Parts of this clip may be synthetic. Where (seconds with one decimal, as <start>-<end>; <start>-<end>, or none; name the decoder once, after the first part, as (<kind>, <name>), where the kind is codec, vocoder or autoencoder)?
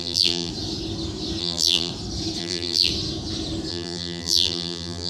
0.0-0.5 (vocoder, BigVGAN v2); 1.4-1.9; 2.4-2.9; 3.7-5.1